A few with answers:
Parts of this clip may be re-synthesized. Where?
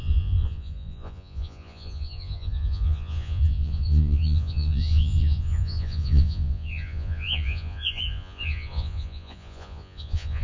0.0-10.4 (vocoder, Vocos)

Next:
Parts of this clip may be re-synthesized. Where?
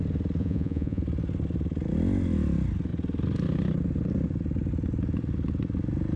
0.4-1.0 (vocoder, Vocos)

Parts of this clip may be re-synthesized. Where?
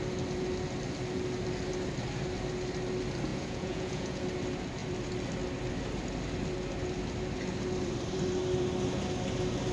3.3-4.2 (vocoder, Vocos)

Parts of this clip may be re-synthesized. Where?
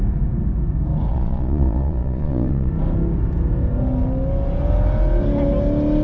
1.1-2.7 (vocoder, Vocos)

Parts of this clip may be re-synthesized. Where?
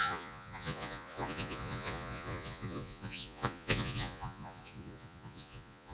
0.0-5.9 (vocoder, Vocos)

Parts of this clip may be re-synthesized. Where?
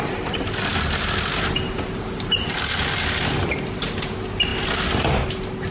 none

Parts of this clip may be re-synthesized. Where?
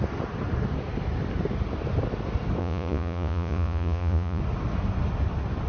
2.6-4.4 (vocoder, Vocos)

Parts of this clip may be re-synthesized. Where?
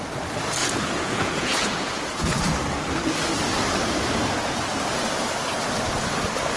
0.6-2.6 (vocoder, Vocos)